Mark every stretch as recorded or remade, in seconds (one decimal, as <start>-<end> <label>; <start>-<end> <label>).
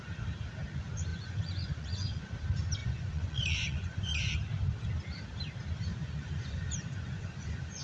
0.0-1.1 recorded; 1.1-2.2 remade; 2.2-2.8 recorded; 2.8-4.3 remade; 4.3-5.9 recorded; 5.9-7.8 remade